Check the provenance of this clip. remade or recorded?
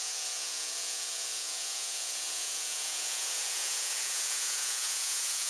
remade